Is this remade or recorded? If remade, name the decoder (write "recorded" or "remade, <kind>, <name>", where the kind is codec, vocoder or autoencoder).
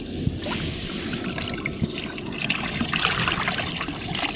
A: remade, vocoder, BigVGAN v2